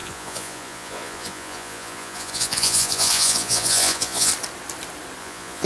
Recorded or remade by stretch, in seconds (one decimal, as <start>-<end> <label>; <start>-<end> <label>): 0.0-4.3 remade; 4.3-5.2 recorded; 5.2-5.7 remade